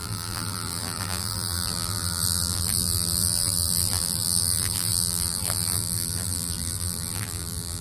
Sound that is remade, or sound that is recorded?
remade